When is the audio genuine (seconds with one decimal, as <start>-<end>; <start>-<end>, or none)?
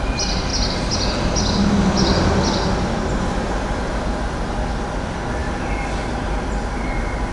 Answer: 0.0-7.3